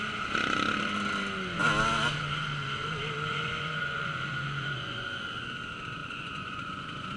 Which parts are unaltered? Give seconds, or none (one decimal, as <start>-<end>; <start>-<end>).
0.0-3.3; 5.2-6.0